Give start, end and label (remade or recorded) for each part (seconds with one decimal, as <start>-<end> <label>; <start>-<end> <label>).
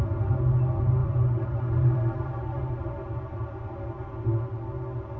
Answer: 0.0-1.0 recorded; 1.0-4.1 remade; 4.1-5.2 recorded